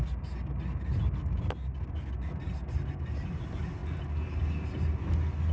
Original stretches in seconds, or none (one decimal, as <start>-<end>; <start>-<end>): 0.0-2.6; 3.4-5.5